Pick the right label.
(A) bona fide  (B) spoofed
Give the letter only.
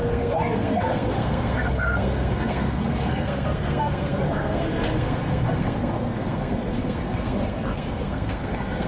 B